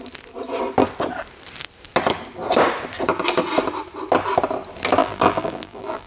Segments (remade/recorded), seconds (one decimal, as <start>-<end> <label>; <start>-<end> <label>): 0.0-5.0 recorded; 5.0-6.1 remade